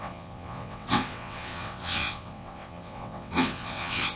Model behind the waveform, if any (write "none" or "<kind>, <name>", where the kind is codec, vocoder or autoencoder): vocoder, WaveNeXt